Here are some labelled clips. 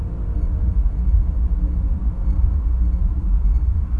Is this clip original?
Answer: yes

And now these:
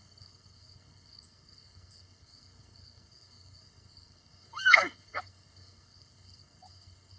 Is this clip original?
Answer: no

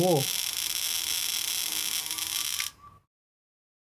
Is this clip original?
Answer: yes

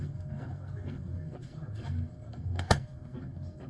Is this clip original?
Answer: no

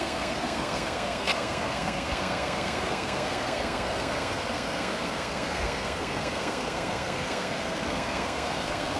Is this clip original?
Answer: no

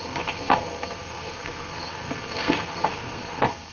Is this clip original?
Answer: no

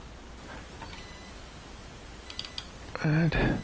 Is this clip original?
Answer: yes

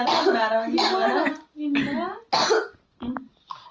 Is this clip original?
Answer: yes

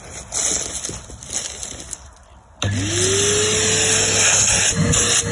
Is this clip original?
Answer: yes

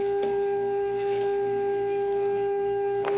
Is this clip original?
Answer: no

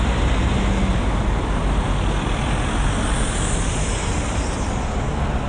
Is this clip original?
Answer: yes